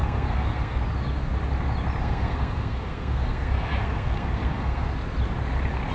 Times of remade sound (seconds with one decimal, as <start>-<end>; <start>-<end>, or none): 0.0-0.8; 2.0-4.9